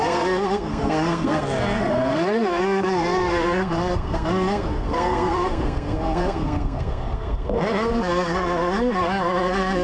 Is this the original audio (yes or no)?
no